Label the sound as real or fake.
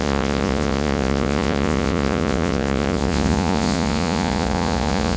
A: fake